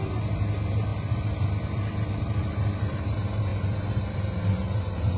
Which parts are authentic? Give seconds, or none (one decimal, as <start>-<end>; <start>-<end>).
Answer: 0.0-0.9; 3.0-3.5; 4.4-5.2